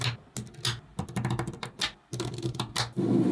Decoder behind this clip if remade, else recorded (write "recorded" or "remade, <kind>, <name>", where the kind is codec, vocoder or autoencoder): recorded